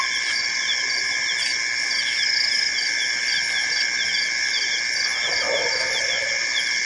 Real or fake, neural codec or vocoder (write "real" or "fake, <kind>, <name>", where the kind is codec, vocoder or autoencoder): real